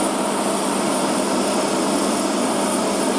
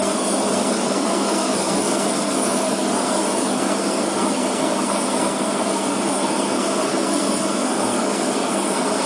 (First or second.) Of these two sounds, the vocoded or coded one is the second